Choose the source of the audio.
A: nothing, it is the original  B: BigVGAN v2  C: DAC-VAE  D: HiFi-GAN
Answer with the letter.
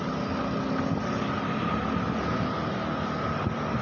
A